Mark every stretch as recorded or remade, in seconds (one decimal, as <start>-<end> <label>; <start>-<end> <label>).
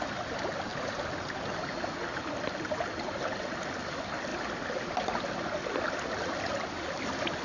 0.0-7.4 recorded